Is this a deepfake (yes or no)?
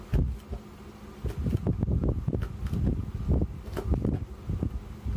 no